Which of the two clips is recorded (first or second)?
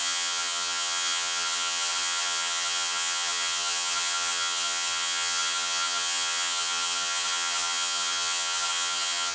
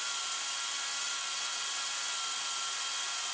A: second